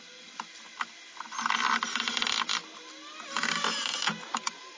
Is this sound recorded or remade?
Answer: recorded